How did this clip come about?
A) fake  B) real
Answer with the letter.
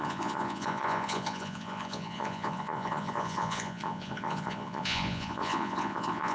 A